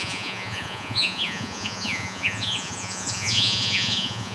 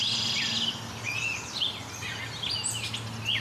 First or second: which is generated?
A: first